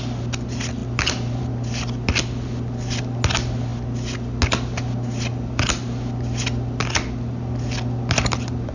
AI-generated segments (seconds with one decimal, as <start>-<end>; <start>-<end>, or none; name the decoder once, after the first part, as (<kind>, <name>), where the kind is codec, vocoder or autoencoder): none